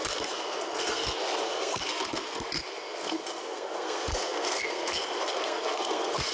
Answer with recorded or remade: remade